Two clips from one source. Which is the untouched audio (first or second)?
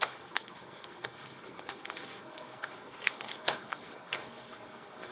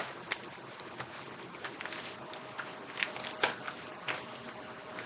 second